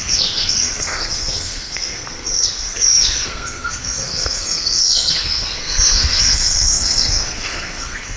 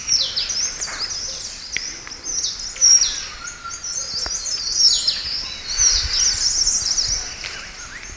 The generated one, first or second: first